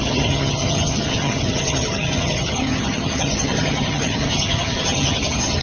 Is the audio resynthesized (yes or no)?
yes